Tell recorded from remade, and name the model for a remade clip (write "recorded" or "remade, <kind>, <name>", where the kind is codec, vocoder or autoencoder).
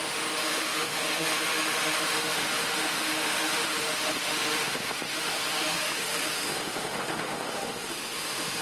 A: remade, autoencoder, DAC-VAE